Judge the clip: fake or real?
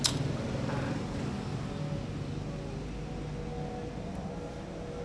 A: real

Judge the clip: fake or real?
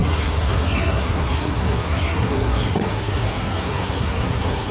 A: fake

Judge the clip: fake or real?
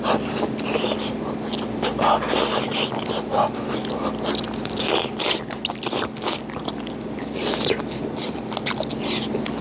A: real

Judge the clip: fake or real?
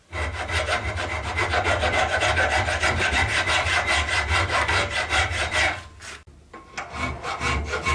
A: real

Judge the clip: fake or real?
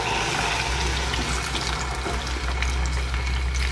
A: real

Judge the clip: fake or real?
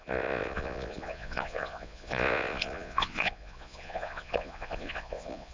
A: fake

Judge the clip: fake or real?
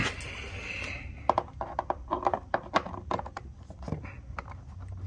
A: real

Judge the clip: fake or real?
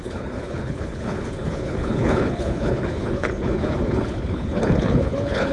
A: fake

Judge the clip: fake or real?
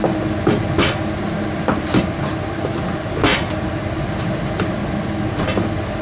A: real